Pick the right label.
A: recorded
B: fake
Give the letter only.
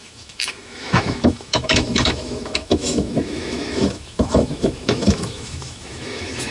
B